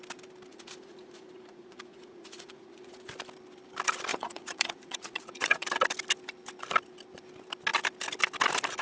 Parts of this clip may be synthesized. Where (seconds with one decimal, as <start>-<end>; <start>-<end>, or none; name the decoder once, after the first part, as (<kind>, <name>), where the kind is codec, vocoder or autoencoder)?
0.5-3.1 (vocoder, Vocos); 4.1-5.7